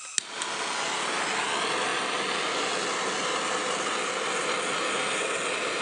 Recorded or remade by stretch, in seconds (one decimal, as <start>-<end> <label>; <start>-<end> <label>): 0.0-5.8 recorded